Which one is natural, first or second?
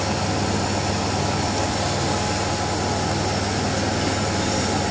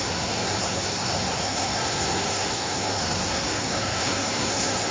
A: first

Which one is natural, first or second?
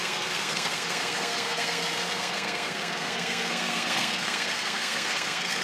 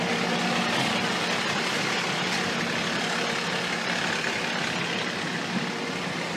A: second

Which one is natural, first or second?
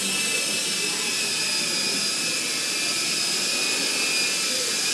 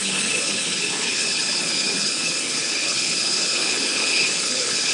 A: first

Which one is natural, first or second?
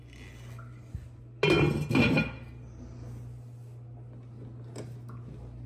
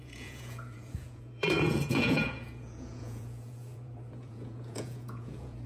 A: first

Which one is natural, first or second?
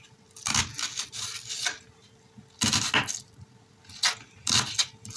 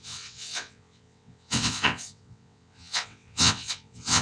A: first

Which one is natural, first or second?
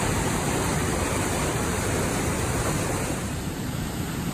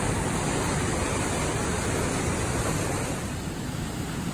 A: second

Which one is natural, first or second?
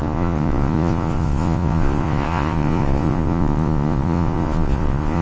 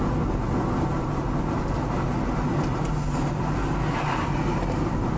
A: second